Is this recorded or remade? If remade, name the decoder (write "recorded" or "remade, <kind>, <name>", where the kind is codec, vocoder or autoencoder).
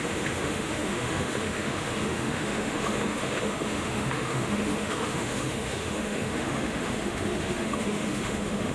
remade, autoencoder, DAC-VAE